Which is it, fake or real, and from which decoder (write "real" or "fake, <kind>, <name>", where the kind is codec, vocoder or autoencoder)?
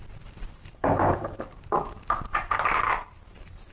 fake, vocoder, BigVGAN v2